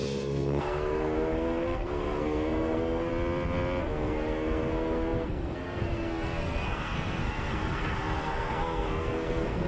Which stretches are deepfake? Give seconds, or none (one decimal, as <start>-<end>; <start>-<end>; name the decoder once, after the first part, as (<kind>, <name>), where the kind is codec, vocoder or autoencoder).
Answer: 0.0-3.1 (codec, SNAC); 3.8-9.7